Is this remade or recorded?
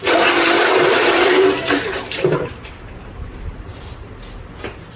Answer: remade